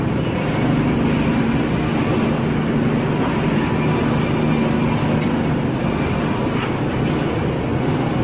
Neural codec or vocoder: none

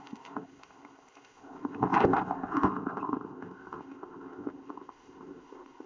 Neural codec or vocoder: codec, ZipCodec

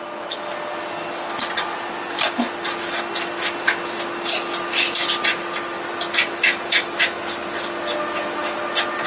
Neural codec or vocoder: none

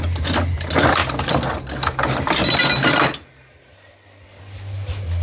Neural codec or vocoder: none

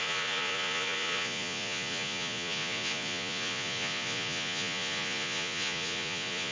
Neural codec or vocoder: vocoder, Vocos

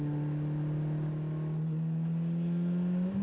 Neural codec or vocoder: none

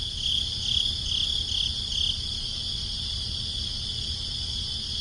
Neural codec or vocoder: none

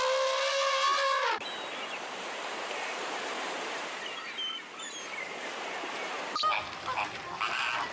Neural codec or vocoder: none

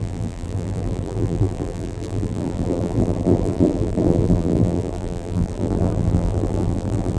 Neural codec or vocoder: vocoder, BigVGAN v2